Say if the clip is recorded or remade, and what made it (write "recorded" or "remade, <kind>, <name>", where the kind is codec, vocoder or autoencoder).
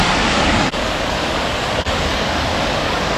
remade, codec, DAC